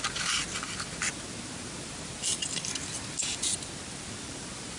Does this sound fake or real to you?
real